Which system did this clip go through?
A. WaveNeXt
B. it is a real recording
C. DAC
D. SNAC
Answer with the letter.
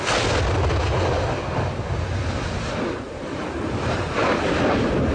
B